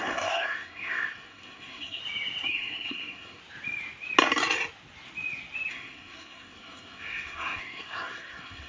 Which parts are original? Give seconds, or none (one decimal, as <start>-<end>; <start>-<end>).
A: 2.0-2.5; 3.4-5.7

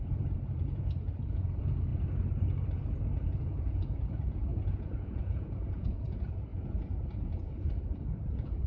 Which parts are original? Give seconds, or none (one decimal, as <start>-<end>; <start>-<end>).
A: 1.9-3.0